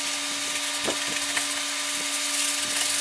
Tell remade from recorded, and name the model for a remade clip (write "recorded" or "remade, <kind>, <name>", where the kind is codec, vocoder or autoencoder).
recorded